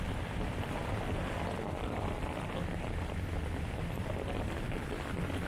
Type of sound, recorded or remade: remade